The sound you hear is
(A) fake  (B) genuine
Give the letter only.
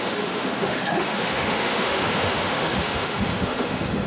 A